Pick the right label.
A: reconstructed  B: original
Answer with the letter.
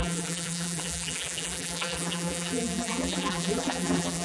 A